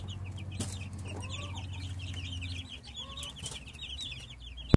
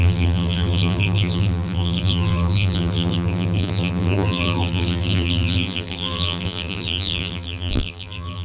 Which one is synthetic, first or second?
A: second